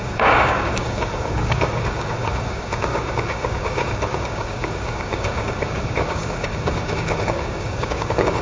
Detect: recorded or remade remade